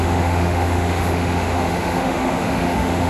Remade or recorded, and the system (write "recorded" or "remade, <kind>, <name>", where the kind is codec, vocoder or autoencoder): remade, autoencoder, DAC-VAE